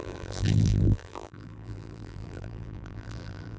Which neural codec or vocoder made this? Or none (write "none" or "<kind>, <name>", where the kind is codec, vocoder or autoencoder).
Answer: vocoder, BigVGAN v2